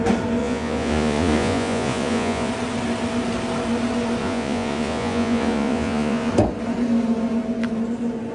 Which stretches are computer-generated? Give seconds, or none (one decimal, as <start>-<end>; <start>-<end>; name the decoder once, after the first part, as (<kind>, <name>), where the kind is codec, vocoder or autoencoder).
0.4-2.5 (vocoder, Vocos); 4.2-6.3